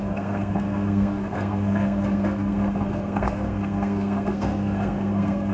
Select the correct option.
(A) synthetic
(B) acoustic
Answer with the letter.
A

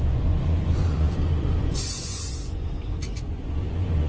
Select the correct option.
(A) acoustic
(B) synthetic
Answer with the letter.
B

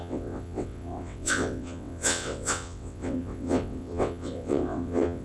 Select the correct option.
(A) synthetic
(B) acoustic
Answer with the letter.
A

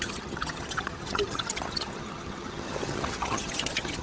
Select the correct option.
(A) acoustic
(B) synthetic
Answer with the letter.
B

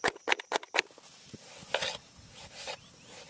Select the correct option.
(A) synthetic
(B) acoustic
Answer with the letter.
B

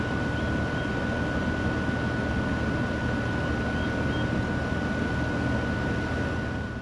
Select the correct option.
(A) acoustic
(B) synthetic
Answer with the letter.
A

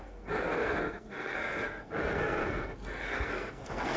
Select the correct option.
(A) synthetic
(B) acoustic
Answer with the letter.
A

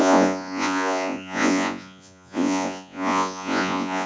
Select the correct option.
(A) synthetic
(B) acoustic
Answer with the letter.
A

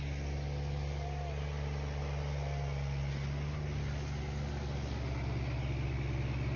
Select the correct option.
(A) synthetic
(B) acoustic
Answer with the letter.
B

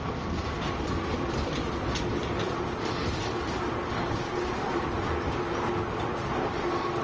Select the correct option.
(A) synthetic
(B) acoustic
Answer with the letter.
B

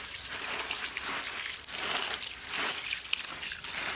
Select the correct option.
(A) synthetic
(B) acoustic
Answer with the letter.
B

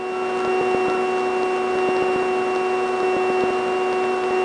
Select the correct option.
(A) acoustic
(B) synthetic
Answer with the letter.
A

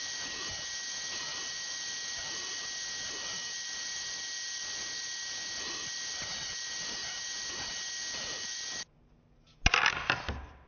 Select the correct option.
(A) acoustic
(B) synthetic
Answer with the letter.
A